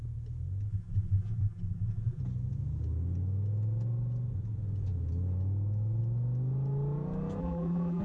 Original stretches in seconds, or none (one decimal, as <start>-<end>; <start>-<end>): 0.0-0.7; 2.2-7.4